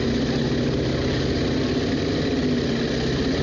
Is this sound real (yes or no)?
yes